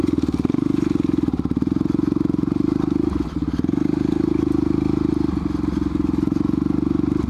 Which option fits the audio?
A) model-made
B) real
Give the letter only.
B